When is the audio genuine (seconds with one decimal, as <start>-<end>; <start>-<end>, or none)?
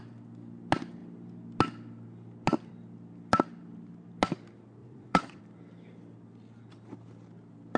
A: 0.0-4.8; 5.4-7.8